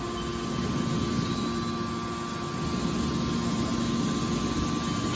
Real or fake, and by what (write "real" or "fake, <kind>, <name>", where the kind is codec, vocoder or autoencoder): real